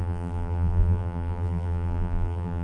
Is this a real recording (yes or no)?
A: no